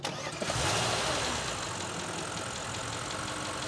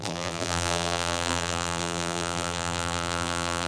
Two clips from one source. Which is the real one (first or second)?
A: first